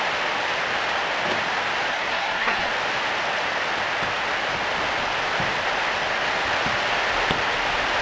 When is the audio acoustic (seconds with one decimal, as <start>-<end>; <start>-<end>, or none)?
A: 0.0-1.9; 2.7-8.0